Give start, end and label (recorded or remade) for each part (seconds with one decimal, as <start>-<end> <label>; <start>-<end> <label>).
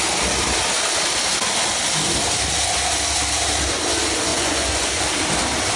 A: 0.0-4.3 recorded; 4.3-5.0 remade; 5.0-5.8 recorded